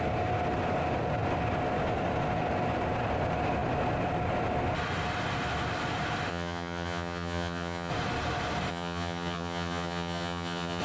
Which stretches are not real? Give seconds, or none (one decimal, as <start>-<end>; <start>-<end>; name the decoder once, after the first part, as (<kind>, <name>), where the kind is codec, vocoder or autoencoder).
6.3-7.9 (vocoder, HiFi-GAN); 8.7-10.8